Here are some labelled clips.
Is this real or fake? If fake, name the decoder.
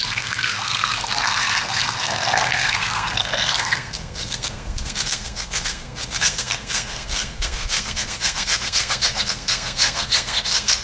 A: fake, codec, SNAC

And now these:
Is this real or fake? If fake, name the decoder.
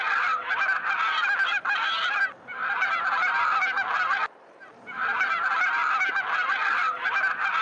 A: real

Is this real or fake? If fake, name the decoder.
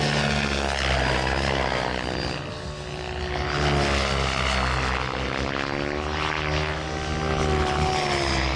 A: real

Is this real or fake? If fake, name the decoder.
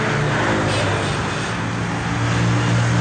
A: real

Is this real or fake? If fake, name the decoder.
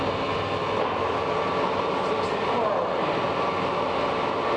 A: real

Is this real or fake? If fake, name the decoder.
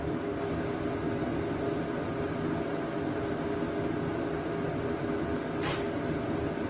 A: real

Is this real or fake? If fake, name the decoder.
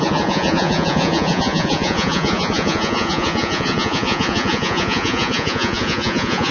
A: fake, vocoder, Vocos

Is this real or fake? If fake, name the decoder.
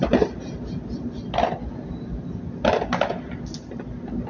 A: real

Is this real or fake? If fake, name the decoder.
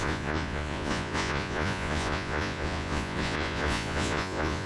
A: fake, vocoder, Vocos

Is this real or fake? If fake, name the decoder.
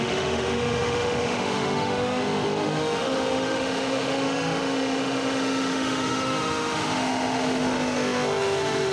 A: fake, autoencoder, DAC-VAE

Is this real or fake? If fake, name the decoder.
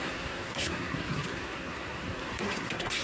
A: fake, codec, SNAC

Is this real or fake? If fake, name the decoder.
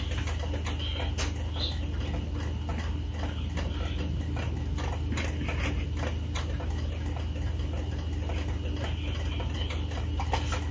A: real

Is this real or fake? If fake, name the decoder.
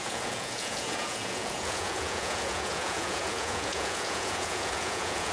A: fake, vocoder, Vocos